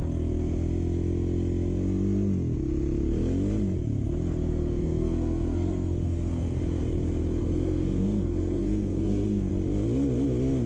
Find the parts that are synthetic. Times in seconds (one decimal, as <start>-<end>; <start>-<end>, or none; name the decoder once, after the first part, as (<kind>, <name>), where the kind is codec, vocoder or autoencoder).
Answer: 4.5-6.6 (codec, SNAC); 7.4-9.5